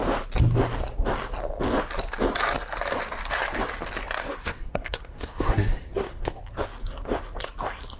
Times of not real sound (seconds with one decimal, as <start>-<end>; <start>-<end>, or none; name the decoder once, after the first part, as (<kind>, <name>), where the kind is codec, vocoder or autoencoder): 4.2-6.4 (codec, SNAC)